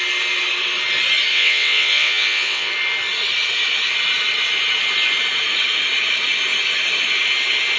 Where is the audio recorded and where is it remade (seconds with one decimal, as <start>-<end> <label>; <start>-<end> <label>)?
0.0-1.3 recorded; 1.3-2.7 remade; 2.7-7.8 recorded